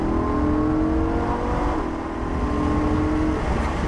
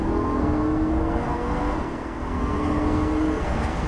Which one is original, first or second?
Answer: first